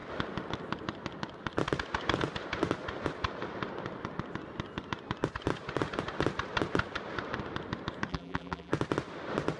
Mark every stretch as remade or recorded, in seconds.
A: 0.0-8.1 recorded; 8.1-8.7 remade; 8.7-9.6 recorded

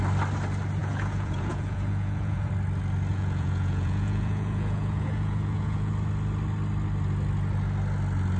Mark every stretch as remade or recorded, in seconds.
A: 0.0-0.8 recorded; 0.8-2.5 remade; 2.5-3.1 recorded; 3.1-5.9 remade; 5.9-8.4 recorded

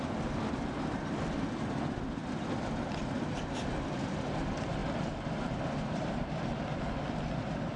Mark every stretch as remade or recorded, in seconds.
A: 0.0-4.8 recorded; 4.8-7.2 remade; 7.2-7.8 recorded

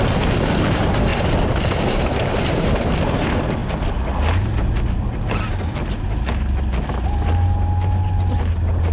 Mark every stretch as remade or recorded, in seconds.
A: 0.0-1.1 recorded; 1.1-2.9 remade; 2.9-8.9 recorded